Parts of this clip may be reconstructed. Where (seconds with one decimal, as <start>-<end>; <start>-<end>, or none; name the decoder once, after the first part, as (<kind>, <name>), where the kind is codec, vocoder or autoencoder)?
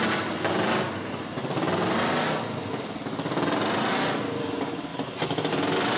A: 4.9-5.5 (vocoder, BigVGAN v2)